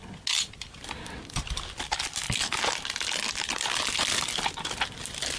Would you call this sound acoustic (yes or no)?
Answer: yes